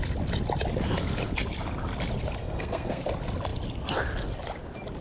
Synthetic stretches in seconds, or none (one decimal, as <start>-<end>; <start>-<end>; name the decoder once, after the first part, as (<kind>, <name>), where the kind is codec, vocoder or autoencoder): 2.4-3.0 (codec, SNAC)